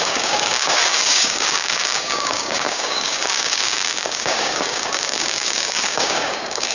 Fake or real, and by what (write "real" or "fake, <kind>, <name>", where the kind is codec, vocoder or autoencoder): fake, codec, DAC